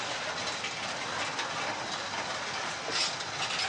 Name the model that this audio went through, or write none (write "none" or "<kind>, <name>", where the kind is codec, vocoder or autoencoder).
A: none